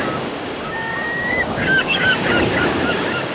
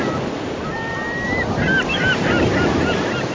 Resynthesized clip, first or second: first